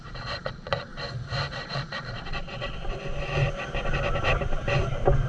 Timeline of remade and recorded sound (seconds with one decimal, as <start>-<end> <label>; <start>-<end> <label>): 0.0-0.9 remade; 0.9-1.5 recorded; 1.5-2.7 remade; 2.7-5.3 recorded